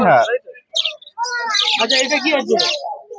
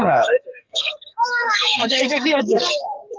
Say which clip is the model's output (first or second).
second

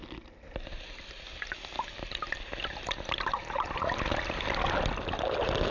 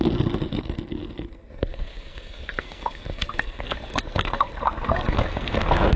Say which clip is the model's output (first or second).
second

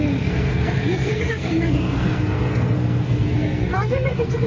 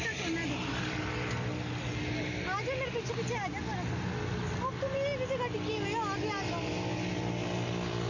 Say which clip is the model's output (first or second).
first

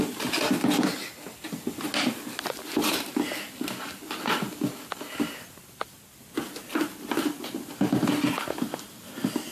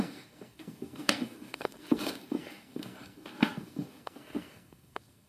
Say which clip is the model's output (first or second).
second